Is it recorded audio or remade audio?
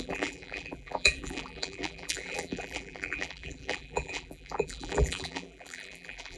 remade